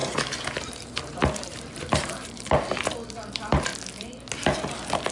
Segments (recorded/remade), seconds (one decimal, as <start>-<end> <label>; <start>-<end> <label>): 0.0-2.7 remade; 2.7-5.1 recorded